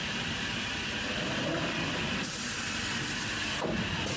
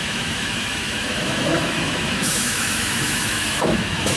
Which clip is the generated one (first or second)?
second